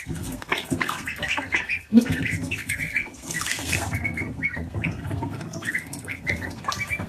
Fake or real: fake